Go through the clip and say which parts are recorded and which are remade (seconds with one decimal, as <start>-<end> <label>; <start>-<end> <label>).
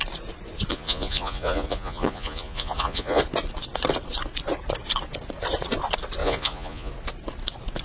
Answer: 0.0-0.7 recorded; 0.7-3.2 remade; 3.2-6.2 recorded; 6.2-6.9 remade; 6.9-7.8 recorded